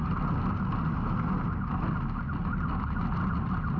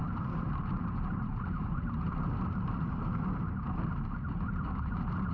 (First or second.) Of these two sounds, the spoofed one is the second